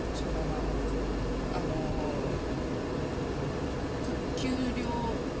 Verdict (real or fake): real